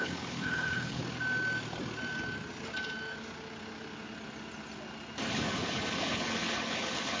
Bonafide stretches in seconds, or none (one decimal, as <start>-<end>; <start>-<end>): 1.0-5.3